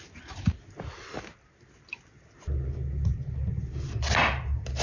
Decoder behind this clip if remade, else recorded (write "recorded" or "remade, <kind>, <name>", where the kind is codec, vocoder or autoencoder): recorded